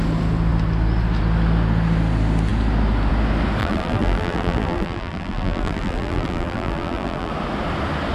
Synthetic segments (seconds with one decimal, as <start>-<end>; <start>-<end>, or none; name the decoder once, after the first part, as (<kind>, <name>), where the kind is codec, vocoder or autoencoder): 3.6-7.3 (vocoder, BigVGAN v2)